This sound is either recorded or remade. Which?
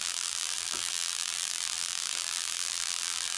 remade